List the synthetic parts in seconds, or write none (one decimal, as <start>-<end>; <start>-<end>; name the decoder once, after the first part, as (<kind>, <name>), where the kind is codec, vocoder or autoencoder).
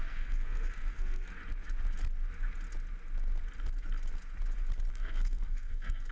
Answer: 0.0-1.3 (codec, SNAC); 4.9-6.1